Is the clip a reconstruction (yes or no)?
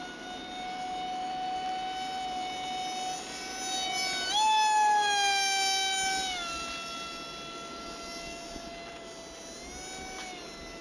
no